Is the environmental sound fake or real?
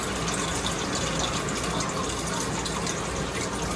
real